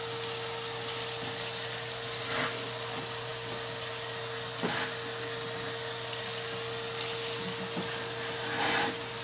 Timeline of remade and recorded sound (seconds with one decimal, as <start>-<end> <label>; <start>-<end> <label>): 0.0-9.2 recorded